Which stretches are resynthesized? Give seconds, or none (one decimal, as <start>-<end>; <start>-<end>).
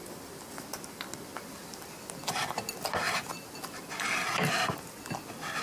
none